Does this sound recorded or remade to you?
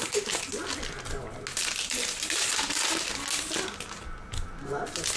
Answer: recorded